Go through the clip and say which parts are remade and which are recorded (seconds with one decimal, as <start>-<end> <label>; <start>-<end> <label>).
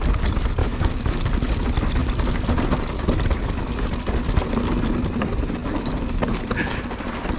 0.0-0.6 recorded; 0.6-1.2 remade; 1.2-7.4 recorded